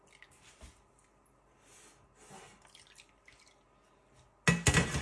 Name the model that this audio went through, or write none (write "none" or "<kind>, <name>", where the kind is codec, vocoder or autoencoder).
none